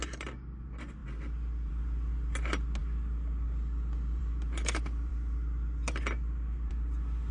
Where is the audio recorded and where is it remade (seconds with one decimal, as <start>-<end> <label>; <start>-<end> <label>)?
0.0-7.3 recorded